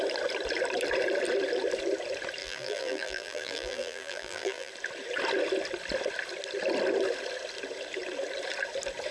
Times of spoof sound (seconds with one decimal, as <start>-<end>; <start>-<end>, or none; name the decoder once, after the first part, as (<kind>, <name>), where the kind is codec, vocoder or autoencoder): 2.4-4.7 (vocoder, BigVGAN v2)